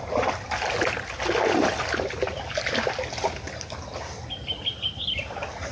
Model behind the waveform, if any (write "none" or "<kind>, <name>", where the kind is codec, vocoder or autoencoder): none